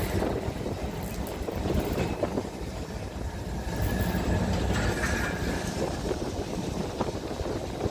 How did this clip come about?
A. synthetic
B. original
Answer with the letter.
B